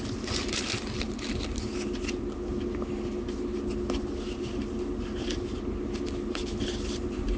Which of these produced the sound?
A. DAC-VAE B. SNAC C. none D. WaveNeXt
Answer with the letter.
C